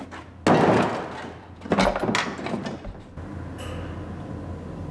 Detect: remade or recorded recorded